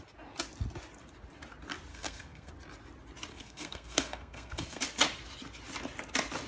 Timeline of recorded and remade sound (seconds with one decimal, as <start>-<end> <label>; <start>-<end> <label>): 0.0-1.9 recorded; 1.9-2.5 remade; 2.5-3.3 recorded; 3.3-4.8 remade; 4.8-6.5 recorded